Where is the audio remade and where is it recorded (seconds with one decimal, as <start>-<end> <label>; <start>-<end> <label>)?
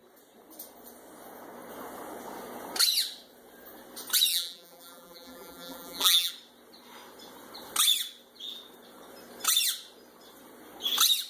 0.0-4.3 recorded; 4.3-6.3 remade; 6.3-11.3 recorded